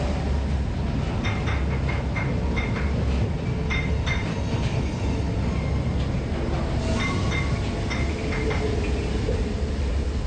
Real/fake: real